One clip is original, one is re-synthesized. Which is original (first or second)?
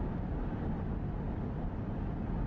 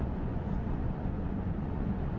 first